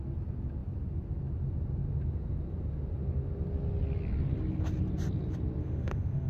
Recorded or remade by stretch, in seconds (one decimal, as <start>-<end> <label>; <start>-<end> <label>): 0.0-5.6 recorded; 5.6-6.3 remade